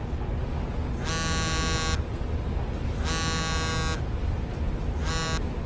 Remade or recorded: recorded